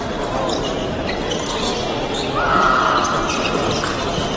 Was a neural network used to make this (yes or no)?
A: no